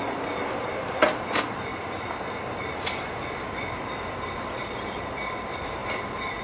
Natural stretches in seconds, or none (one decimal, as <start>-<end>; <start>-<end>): 0.0-6.4